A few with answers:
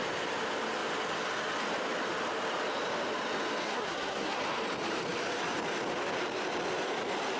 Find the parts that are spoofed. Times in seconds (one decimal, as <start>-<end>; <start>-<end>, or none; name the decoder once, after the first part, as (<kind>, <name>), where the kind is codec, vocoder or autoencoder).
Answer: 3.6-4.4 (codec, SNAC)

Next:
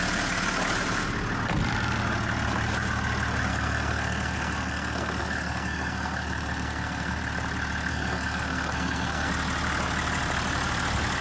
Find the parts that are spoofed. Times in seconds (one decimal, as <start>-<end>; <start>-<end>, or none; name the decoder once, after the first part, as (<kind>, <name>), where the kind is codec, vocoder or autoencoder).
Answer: 3.5-7.2 (codec, SNAC); 7.9-9.3

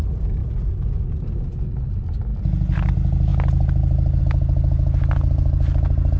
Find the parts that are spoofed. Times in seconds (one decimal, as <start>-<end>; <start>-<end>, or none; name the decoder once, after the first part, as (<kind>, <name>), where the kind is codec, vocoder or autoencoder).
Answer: none

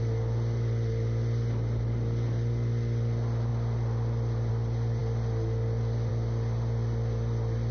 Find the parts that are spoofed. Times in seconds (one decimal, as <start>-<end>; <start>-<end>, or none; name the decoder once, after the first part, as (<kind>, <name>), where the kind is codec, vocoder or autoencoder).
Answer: none

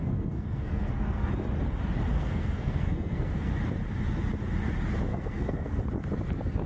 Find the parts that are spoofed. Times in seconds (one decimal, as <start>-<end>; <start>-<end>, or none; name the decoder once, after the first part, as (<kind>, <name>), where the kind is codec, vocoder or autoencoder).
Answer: 0.0-1.3 (codec, SNAC); 2.1-3.5; 5.1-5.8

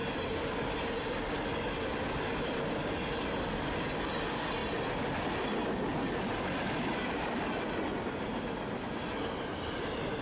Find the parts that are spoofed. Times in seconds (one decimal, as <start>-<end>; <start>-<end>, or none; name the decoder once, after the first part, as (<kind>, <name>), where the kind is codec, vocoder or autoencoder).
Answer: none